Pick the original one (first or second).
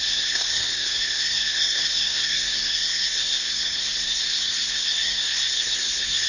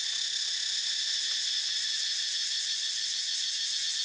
second